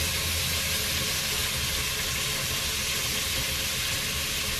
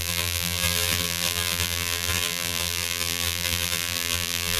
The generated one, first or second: second